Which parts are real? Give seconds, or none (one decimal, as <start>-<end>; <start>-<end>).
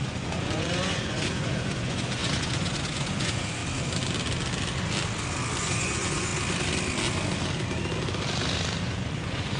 3.6-5.6; 6.3-8.8